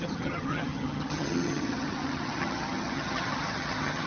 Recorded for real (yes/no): no